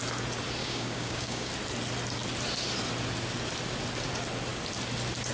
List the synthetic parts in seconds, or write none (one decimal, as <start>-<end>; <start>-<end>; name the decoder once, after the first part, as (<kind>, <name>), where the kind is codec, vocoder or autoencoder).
0.6-1.5 (codec, DAC)